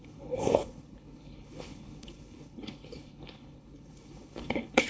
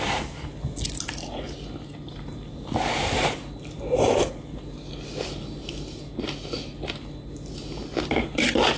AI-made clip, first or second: first